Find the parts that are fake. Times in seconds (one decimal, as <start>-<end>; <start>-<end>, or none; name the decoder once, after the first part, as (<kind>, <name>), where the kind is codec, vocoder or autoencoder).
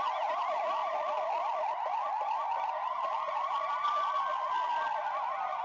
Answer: none